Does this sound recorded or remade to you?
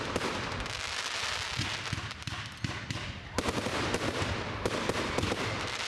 recorded